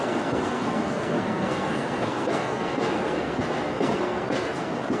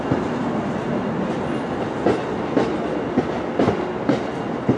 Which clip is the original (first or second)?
second